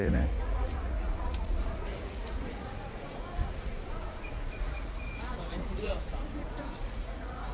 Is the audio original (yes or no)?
no